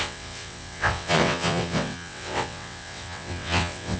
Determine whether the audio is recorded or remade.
remade